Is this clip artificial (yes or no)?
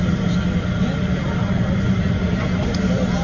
no